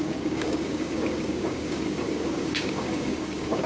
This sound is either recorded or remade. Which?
remade